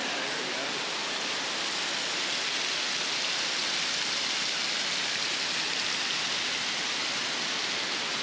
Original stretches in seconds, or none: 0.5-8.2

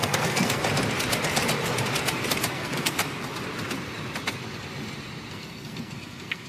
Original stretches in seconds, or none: 0.6-2.5; 3.0-5.3

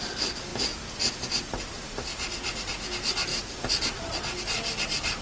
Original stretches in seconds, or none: 0.0-5.2

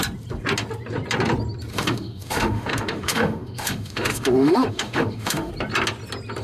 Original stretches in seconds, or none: 0.0-1.7; 5.5-6.4

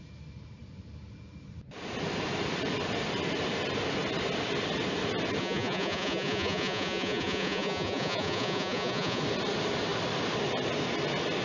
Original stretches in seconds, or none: 0.0-5.4; 9.2-11.4